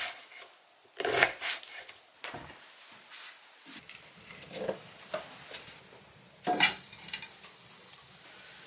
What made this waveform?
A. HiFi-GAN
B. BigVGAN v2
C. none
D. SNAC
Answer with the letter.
B